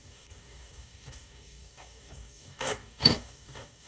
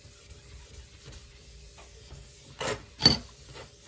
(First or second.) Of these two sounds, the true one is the second